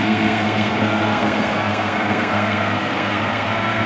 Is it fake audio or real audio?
fake